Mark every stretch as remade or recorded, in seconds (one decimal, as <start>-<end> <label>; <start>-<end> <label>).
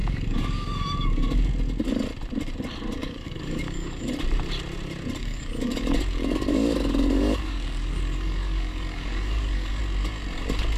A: 0.0-1.5 remade; 1.5-3.0 recorded; 3.0-4.1 remade; 4.1-5.2 recorded; 5.2-9.8 remade; 9.8-10.8 recorded